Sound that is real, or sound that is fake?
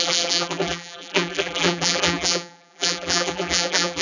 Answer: fake